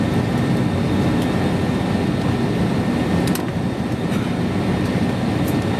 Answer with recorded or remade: recorded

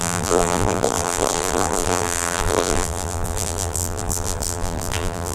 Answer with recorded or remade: remade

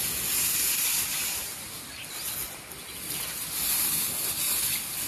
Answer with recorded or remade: recorded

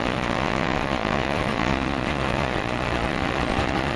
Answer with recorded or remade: remade